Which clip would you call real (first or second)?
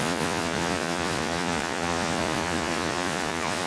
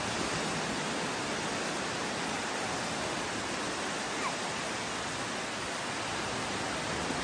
second